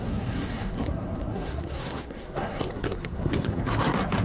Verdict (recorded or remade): remade